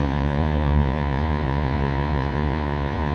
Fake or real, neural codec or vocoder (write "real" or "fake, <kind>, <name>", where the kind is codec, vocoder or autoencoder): fake, vocoder, Vocos